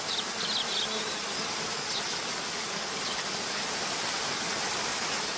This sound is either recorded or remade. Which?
recorded